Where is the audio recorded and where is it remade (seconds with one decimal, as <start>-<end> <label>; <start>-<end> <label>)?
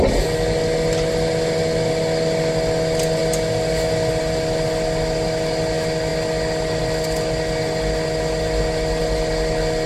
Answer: 0.0-9.9 recorded